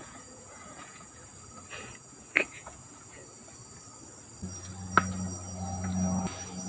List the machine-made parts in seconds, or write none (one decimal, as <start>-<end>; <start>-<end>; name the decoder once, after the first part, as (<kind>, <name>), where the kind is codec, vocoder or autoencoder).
0.0-1.3 (vocoder, Vocos); 1.8-3.2